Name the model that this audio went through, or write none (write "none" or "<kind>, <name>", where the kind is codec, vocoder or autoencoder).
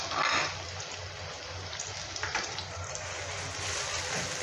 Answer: none